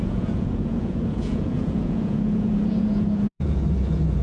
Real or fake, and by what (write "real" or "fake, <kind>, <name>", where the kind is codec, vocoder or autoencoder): fake, vocoder, Vocos